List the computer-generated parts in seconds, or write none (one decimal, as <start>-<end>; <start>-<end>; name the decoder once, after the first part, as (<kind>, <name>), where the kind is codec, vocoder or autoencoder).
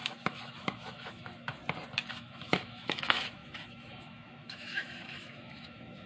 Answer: 0.0-1.6 (autoencoder, DAC-VAE); 2.1-6.1